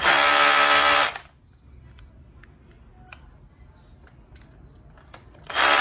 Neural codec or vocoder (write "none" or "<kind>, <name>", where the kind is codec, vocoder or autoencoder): none